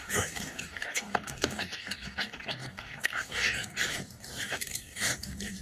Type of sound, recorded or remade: remade